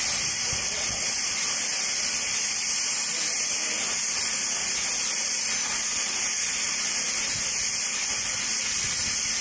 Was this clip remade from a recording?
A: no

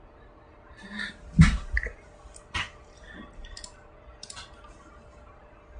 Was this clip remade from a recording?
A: no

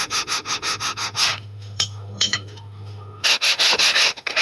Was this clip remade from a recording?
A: yes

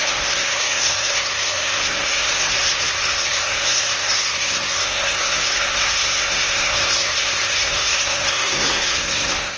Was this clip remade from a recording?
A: yes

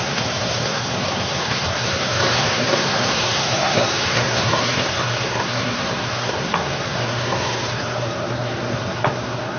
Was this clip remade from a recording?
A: yes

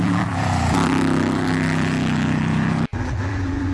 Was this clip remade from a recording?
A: yes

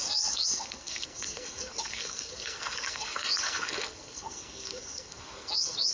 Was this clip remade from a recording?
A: yes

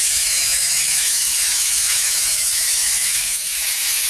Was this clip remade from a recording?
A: yes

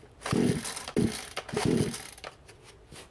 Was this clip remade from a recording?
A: no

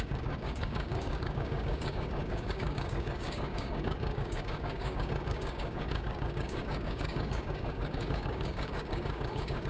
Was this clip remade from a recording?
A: yes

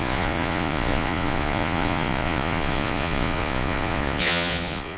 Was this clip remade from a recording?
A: yes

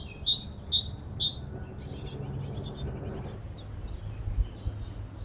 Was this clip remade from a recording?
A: no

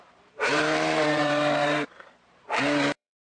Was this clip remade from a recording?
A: yes